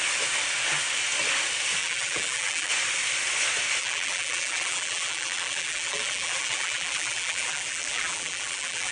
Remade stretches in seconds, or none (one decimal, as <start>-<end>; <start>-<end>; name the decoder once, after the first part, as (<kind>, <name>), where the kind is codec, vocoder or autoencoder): 1.8-2.7 (vocoder, BigVGAN v2); 3.8-8.9